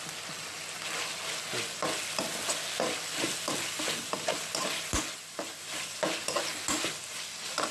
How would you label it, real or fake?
real